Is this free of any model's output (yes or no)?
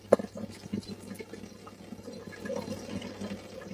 yes